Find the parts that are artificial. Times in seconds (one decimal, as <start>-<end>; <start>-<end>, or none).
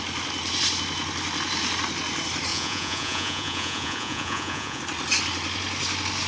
2.5-4.8